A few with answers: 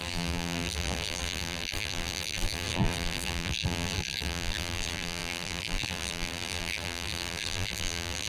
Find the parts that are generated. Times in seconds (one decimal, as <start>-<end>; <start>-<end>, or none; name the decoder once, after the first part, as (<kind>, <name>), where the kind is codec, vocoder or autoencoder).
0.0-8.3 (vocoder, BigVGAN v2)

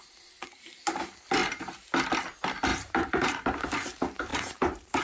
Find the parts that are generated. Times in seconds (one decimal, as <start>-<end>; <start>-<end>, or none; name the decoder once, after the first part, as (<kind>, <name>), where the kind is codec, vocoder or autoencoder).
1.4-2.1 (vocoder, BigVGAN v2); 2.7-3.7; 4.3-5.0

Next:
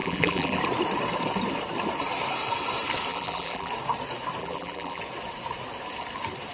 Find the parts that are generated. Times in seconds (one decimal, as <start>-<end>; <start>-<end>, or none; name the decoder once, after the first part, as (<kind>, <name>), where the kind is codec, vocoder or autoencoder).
0.0-0.6 (vocoder, BigVGAN v2); 3.1-3.7; 4.4-5.0

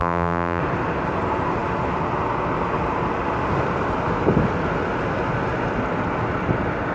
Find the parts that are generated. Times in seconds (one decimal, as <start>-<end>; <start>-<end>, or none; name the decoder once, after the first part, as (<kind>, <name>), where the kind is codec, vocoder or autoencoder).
0.0-0.6 (vocoder, BigVGAN v2)